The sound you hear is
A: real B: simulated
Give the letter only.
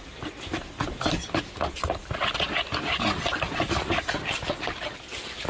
A